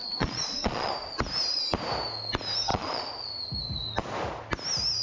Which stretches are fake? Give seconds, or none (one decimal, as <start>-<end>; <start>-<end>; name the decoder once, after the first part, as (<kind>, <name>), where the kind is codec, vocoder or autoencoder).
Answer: 0.0-0.9 (vocoder, Vocos); 2.7-3.3